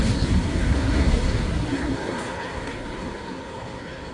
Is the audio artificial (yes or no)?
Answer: yes